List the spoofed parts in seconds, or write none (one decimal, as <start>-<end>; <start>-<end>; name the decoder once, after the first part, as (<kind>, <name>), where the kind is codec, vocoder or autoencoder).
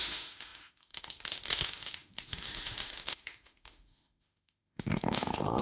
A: 0.0-5.6 (autoencoder, DAC-VAE)